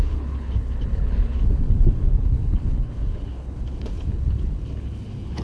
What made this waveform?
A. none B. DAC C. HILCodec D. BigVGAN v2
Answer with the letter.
C